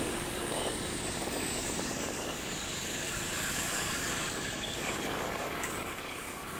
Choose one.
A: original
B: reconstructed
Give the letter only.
B